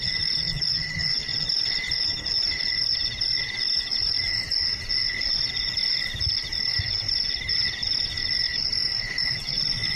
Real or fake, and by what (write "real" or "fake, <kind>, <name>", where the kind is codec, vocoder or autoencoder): fake, vocoder, BigVGAN v2